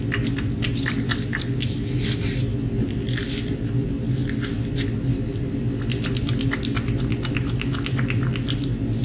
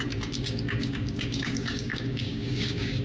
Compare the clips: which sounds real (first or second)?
first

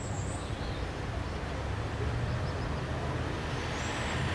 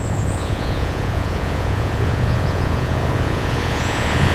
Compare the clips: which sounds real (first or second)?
first